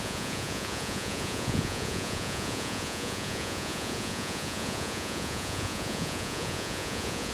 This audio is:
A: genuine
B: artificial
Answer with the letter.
B